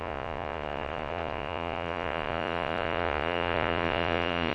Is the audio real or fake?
fake